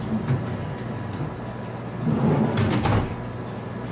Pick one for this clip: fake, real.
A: real